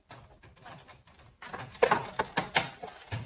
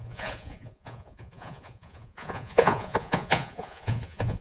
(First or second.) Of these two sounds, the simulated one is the second